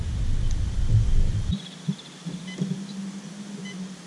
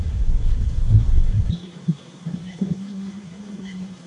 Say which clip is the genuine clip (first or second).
first